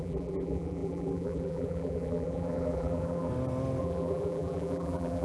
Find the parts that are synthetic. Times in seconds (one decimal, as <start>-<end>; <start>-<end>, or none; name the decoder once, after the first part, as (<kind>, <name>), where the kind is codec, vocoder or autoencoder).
0.0-3.3 (vocoder, BigVGAN v2); 3.8-5.2